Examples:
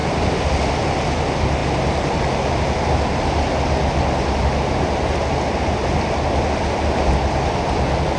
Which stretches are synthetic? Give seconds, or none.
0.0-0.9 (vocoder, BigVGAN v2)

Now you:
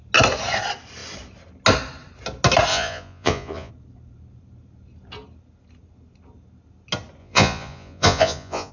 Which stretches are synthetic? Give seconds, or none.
2.7-3.7 (vocoder, Vocos); 7.2-8.7

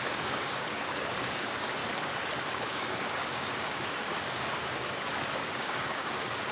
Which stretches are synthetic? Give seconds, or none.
0.0-1.8 (codec, DAC); 2.5-6.5

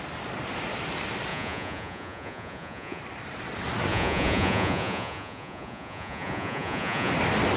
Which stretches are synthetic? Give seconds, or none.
1.3-3.0 (vocoder, Vocos); 3.9-7.1

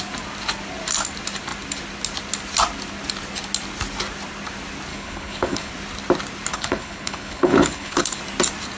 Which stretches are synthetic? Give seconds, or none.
4.9-5.7 (codec, HILCodec); 6.5-8.2

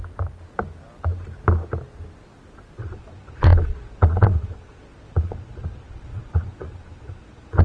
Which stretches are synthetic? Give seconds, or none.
2.8-7.6 (vocoder, Vocos)